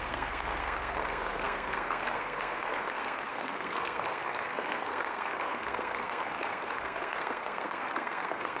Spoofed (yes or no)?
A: yes